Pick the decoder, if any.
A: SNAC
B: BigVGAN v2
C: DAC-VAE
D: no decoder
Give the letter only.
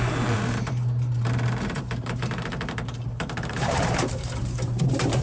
B